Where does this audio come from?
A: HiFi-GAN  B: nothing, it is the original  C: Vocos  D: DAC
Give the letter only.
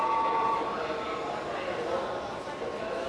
B